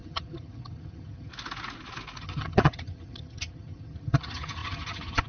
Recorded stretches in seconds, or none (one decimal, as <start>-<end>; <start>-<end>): 1.3-2.2

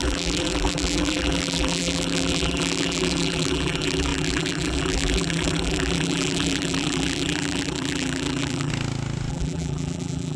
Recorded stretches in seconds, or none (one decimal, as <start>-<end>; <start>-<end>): 8.7-9.3

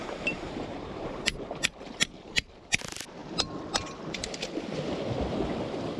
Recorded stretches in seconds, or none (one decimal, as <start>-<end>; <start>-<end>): 1.5-6.0

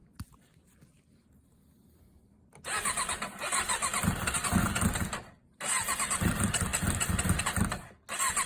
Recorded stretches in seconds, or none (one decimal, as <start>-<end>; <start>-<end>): 0.0-8.5

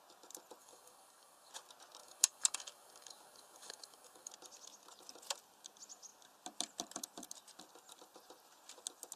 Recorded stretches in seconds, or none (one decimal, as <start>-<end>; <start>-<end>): 0.0-0.6; 1.5-2.0; 4.3-9.2

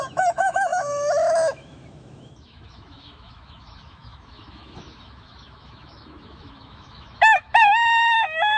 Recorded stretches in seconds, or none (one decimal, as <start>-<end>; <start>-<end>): none

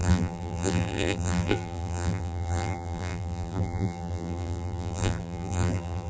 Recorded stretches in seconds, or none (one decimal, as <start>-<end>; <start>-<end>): none